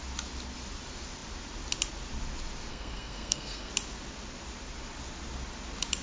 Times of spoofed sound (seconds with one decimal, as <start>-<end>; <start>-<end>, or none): 2.7-3.7

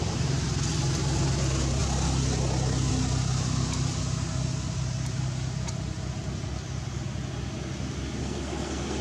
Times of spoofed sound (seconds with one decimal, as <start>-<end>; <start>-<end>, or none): 8.2-9.0

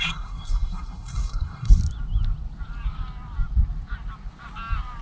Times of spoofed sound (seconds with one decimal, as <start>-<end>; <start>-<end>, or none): 0.0-1.8

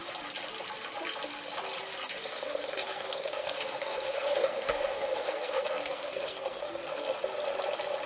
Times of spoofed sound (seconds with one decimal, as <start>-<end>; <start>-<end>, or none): 2.2-7.0

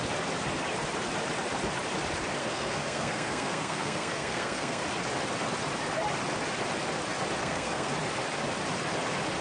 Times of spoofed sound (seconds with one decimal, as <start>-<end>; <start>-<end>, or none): 2.4-4.8; 7.4-7.9

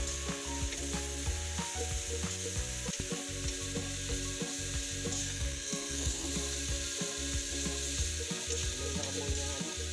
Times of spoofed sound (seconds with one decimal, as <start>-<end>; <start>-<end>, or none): 5.2-6.3

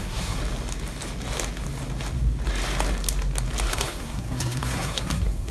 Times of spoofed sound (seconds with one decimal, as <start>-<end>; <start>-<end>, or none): 0.0-0.4; 3.7-5.5